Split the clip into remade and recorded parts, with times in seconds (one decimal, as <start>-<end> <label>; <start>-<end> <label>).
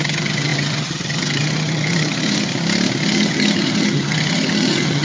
0.0-2.5 remade; 2.5-3.0 recorded; 3.0-5.0 remade